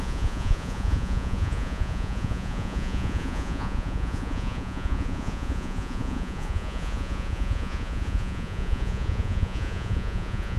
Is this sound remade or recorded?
remade